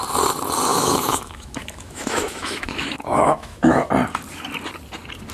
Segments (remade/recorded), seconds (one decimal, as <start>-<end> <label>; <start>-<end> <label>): 0.0-0.7 recorded; 0.7-3.9 remade; 3.9-5.3 recorded